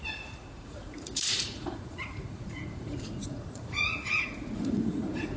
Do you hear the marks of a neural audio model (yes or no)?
yes